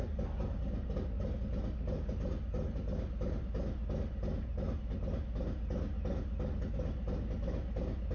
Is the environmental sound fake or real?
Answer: real